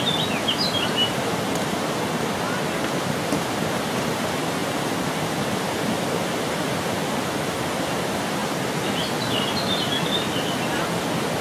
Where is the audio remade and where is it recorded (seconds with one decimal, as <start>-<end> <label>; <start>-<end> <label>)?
0.0-11.4 recorded